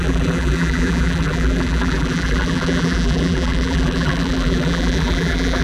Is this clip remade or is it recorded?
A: remade